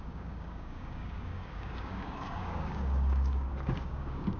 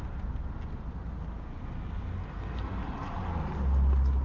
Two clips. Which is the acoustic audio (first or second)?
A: second